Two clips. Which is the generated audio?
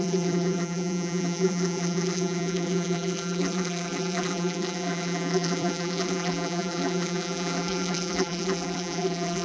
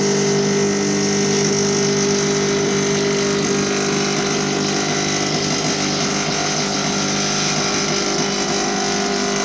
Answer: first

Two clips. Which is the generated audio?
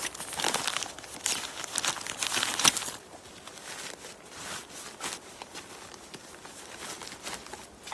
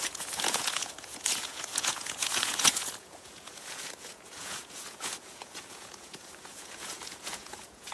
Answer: second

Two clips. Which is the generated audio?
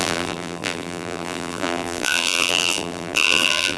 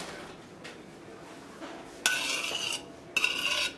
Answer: first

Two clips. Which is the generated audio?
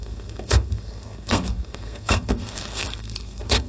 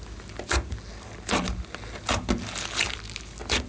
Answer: first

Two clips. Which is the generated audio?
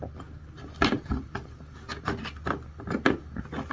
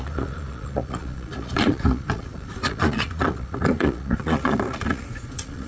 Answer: second